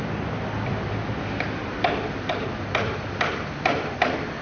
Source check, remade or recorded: recorded